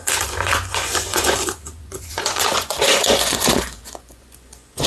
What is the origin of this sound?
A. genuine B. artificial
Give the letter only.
B